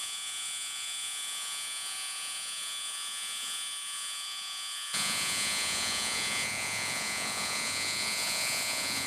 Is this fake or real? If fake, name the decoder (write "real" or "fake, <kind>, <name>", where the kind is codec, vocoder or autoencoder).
fake, vocoder, Vocos